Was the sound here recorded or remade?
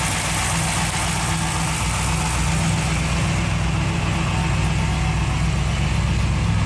recorded